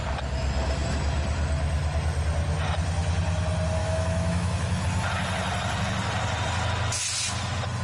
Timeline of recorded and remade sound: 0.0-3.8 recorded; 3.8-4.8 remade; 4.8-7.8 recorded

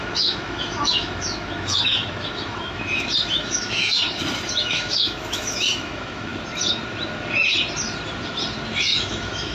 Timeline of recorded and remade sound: 0.0-4.0 remade; 4.0-4.6 recorded; 4.6-6.3 remade; 6.3-8.8 recorded; 8.8-9.5 remade

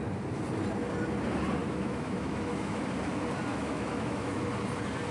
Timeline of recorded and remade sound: 0.0-1.6 recorded; 1.6-2.8 remade; 2.8-3.5 recorded; 3.5-4.4 remade; 4.4-5.1 recorded

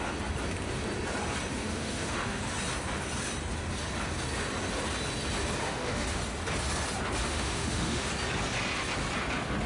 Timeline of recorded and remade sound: 0.0-1.5 recorded; 1.5-2.4 remade; 2.4-5.6 recorded; 5.6-6.2 remade; 6.2-7.2 recorded; 7.2-8.1 remade; 8.1-9.7 recorded

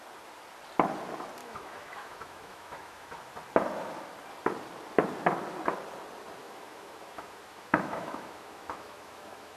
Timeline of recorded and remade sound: 0.0-1.4 recorded; 1.4-3.2 remade; 3.2-6.4 recorded; 6.4-9.6 remade

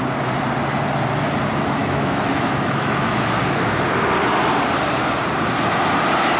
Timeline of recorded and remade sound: 0.0-1.8 recorded; 1.8-3.2 remade; 3.2-6.4 recorded

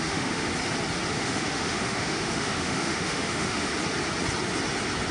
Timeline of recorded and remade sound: 0.0-0.5 remade; 0.5-1.1 recorded; 1.1-3.7 remade; 3.7-5.1 recorded